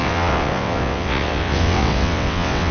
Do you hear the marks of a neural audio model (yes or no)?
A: yes